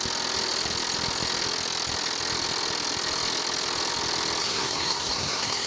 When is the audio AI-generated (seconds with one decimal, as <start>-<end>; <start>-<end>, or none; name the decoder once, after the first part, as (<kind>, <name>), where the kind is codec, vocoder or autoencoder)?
4.4-5.7 (codec, SNAC)